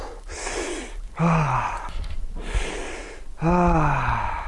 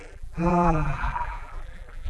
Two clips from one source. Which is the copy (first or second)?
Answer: second